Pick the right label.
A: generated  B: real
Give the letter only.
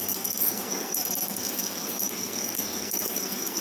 A